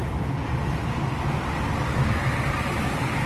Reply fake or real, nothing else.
real